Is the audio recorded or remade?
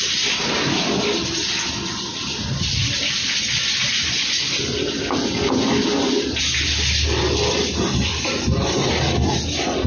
recorded